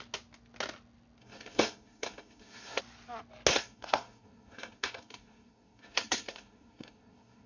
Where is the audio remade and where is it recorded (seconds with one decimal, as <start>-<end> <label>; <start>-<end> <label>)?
0.0-1.2 recorded; 1.2-2.8 remade; 2.8-3.5 recorded; 3.5-7.5 remade